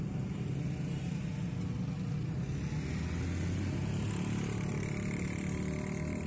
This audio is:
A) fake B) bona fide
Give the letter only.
B